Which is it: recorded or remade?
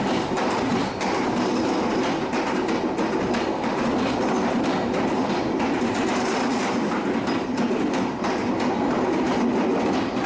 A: recorded